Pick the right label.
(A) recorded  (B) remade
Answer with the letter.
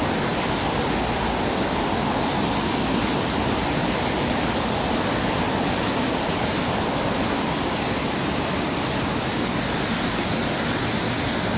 A